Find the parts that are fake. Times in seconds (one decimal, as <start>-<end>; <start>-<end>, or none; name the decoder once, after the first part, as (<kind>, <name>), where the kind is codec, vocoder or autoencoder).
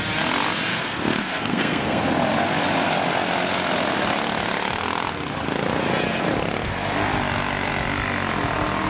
0.7-2.0 (codec, SNAC)